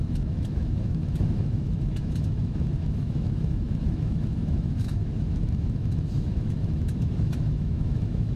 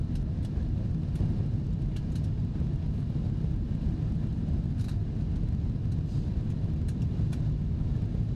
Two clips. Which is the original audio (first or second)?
second